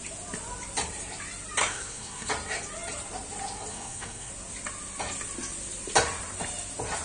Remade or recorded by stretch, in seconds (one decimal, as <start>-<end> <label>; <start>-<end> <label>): 0.0-1.6 recorded; 1.6-2.3 remade; 2.3-3.7 recorded; 3.7-4.3 remade; 4.3-7.0 recorded